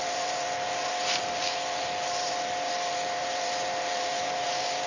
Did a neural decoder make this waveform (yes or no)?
yes